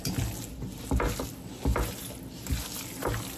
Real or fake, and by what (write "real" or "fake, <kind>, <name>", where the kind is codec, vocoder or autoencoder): real